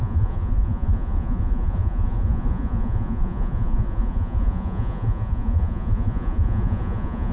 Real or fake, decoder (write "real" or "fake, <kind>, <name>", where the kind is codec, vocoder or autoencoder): fake, vocoder, Vocos